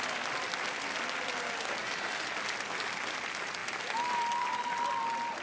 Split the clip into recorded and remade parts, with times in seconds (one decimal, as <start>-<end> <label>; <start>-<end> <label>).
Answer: 0.0-5.4 recorded